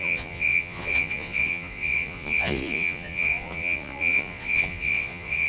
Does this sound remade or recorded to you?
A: remade